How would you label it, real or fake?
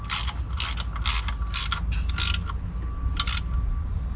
real